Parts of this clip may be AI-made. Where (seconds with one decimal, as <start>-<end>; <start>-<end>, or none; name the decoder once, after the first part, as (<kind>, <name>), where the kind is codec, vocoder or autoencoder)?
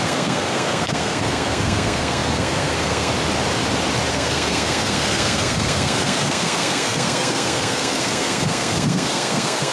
0.0-3.1 (codec, SNAC); 4.1-9.7